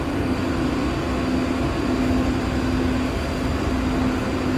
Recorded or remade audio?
recorded